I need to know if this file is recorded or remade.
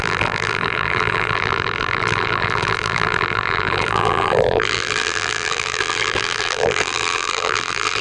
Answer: remade